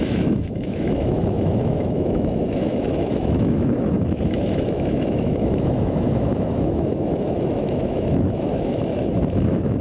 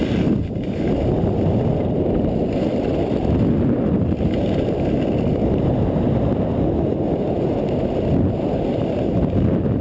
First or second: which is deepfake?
first